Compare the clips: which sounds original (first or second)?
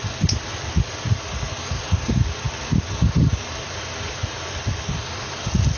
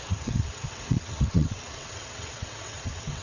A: first